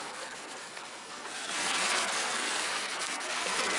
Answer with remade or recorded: remade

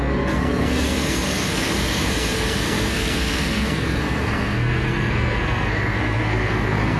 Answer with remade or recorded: remade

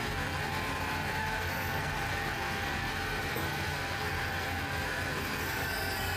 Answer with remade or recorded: remade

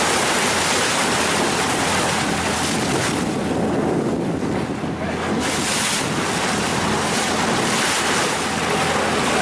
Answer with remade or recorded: recorded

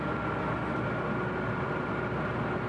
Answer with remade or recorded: recorded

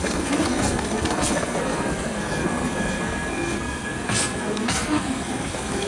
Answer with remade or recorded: remade